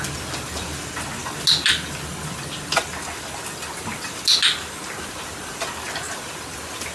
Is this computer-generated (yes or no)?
no